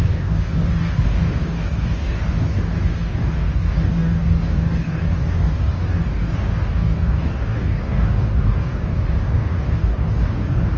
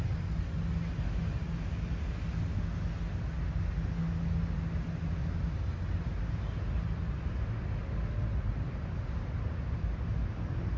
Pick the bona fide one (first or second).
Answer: second